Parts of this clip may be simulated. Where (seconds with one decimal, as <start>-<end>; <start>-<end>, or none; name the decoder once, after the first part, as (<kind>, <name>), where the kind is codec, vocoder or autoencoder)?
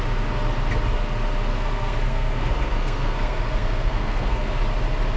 1.5-4.6 (codec, SNAC)